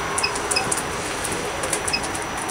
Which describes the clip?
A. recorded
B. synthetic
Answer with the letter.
A